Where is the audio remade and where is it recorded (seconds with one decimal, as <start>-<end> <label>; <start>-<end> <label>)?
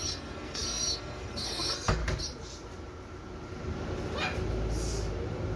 0.0-2.0 remade; 2.0-5.6 recorded